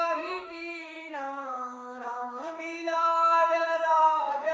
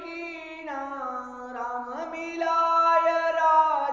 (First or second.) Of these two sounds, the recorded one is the second